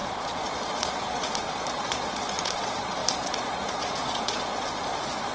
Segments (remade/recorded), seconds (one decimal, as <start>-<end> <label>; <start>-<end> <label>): 0.0-5.3 remade